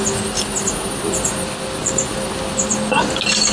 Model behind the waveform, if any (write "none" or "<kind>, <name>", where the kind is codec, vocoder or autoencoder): none